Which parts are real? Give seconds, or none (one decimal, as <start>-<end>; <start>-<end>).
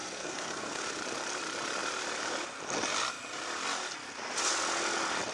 0.8-5.3